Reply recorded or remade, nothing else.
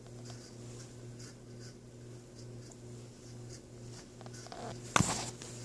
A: recorded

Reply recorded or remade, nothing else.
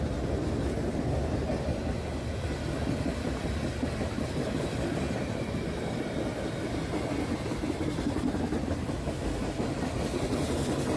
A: recorded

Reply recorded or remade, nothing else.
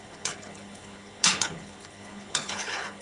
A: remade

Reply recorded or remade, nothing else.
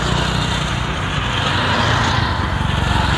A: recorded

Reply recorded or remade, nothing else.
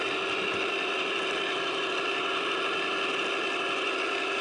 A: remade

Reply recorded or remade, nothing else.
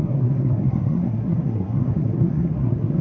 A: remade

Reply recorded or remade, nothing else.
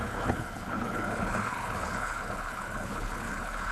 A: remade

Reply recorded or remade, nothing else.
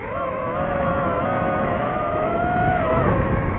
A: remade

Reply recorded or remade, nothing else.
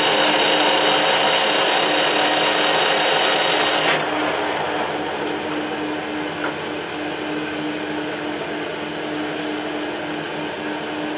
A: recorded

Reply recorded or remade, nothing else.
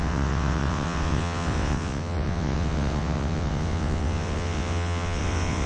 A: remade